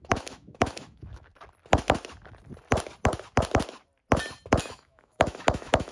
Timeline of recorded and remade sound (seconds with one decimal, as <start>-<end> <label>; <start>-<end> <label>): 0.0-1.3 remade; 1.3-4.6 recorded; 4.6-5.9 remade